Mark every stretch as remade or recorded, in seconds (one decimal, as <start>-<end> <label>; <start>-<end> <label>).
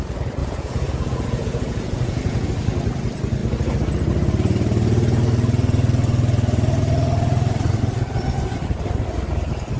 0.0-0.4 recorded; 0.4-2.5 remade; 2.5-9.8 recorded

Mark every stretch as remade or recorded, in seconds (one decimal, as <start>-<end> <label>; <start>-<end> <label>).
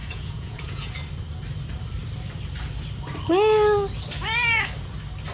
0.0-0.9 remade; 0.9-5.3 recorded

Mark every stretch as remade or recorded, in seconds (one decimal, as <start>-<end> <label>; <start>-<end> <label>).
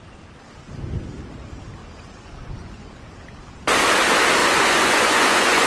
0.0-1.8 recorded; 1.8-3.1 remade; 3.1-4.4 recorded; 4.4-5.7 remade